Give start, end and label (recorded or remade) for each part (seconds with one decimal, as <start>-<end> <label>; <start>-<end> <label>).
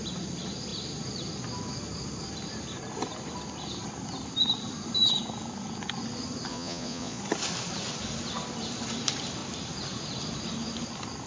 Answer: 0.0-6.5 recorded; 6.5-7.2 remade; 7.2-11.3 recorded